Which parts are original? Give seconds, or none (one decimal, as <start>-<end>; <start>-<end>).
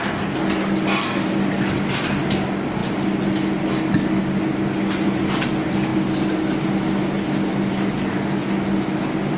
0.0-9.4